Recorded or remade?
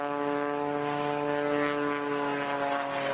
recorded